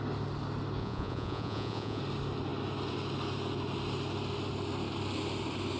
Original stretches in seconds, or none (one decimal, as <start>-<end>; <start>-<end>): 0.0-0.8; 2.0-5.8